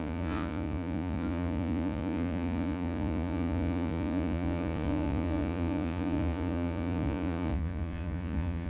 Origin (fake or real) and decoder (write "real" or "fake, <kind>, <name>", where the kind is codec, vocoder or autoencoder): fake, vocoder, Vocos